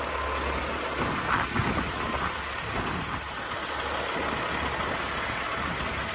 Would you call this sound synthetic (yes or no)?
no